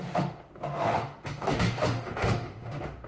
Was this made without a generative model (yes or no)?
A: no